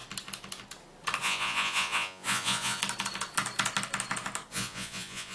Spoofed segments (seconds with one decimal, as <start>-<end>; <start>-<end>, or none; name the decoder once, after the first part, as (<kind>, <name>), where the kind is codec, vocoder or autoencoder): 1.2-2.8 (vocoder, Vocos); 4.5-5.3